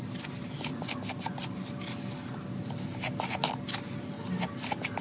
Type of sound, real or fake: real